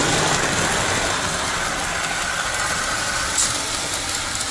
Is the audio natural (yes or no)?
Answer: yes